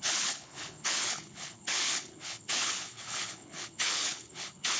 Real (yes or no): no